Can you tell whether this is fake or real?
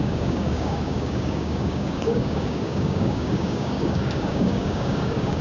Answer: fake